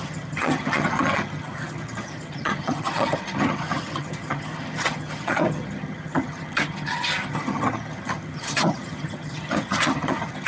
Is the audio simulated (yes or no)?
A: yes